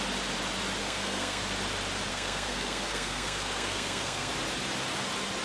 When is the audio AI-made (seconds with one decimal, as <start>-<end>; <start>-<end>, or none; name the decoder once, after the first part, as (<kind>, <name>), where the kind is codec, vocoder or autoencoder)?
0.8-1.4 (codec, SNAC); 2.1-4.3